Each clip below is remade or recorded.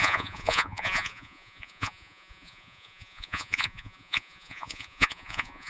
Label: remade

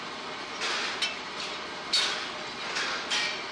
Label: recorded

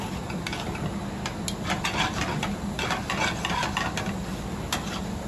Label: recorded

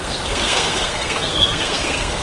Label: remade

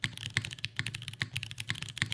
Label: recorded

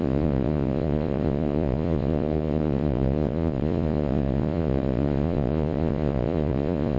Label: remade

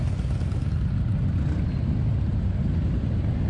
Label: recorded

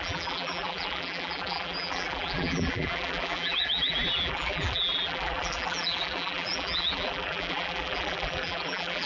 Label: remade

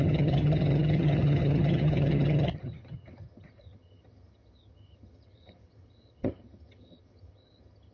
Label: remade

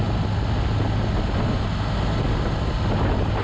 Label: recorded